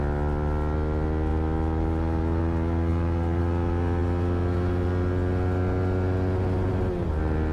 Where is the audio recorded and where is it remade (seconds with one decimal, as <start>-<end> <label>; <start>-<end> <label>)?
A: 0.0-7.5 recorded